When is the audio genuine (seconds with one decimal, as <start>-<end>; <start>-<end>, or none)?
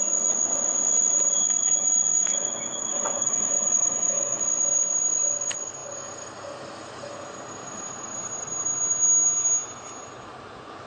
0.0-1.4; 4.4-10.9